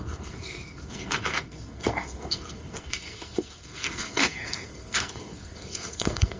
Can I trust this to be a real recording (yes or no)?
no